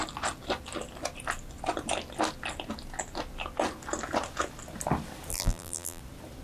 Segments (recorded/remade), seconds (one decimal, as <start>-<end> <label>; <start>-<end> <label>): 0.0-5.3 recorded; 5.3-6.0 remade; 6.0-6.4 recorded